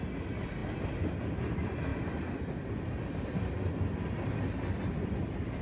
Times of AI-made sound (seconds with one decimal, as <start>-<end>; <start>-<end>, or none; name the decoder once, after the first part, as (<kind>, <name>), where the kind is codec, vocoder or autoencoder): none